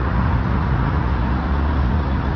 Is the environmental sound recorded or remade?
remade